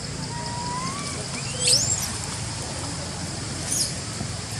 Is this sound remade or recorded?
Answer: remade